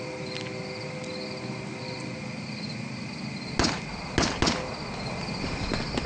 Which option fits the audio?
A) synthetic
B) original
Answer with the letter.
B